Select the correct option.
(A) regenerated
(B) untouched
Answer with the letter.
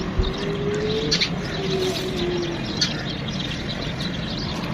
B